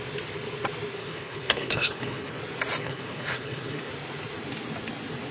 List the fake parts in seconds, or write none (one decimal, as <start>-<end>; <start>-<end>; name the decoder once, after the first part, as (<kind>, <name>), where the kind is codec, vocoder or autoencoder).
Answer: 1.0-2.4 (codec, HILCodec); 2.8-3.9